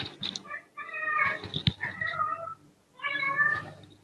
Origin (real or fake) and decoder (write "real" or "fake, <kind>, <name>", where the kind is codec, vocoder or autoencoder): real